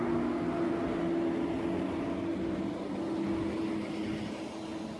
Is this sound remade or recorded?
recorded